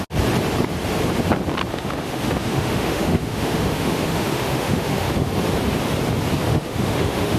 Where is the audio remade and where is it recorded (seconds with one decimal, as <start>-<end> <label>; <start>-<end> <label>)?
0.0-1.7 recorded; 1.7-5.3 remade; 5.3-6.5 recorded; 6.5-7.4 remade